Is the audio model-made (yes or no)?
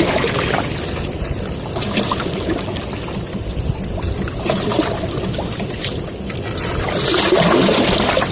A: no